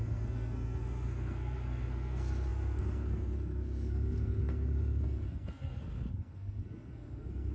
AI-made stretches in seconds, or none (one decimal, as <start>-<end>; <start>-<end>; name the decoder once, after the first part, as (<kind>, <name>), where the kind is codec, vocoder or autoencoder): 0.0-7.5 (codec, SNAC)